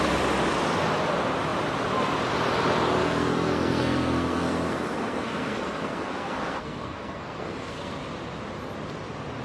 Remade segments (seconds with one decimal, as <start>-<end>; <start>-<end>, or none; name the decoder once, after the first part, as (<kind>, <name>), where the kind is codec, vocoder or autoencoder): 3.0-8.0 (codec, SNAC)